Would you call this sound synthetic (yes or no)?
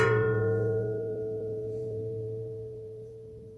yes